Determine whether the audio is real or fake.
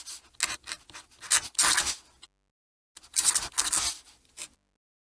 real